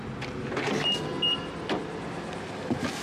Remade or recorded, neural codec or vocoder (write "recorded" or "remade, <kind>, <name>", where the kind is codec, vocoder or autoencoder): recorded